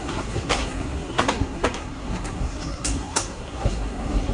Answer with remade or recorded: remade